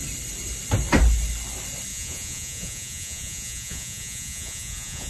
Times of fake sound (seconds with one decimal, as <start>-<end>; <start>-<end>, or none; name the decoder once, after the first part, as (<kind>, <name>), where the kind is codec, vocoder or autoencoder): 1.9-5.1 (vocoder, Vocos)